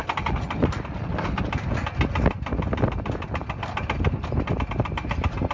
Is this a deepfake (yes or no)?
no